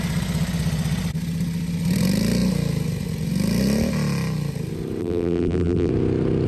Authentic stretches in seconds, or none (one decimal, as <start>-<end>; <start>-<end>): 0.0-5.0; 5.9-6.5